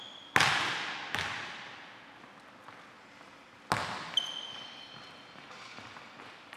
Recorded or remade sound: recorded